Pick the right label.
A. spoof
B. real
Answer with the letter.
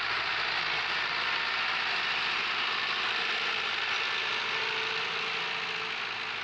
B